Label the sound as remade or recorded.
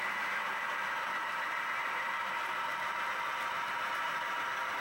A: recorded